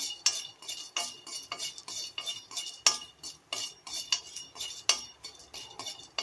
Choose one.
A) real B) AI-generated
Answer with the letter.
A